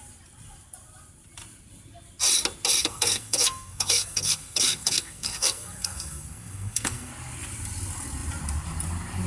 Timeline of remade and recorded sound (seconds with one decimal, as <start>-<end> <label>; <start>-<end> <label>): 0.0-2.8 recorded; 2.8-7.1 remade; 7.1-9.3 recorded